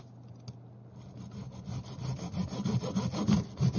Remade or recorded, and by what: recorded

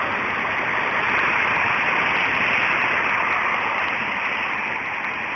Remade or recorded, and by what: recorded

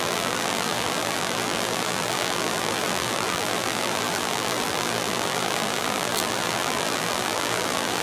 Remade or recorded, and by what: remade, vocoder, BigVGAN v2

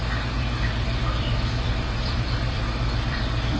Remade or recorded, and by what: remade, vocoder, BigVGAN v2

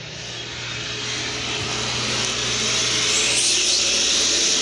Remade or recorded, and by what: recorded